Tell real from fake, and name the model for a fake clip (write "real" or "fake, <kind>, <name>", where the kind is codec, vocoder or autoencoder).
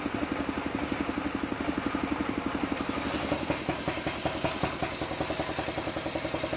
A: real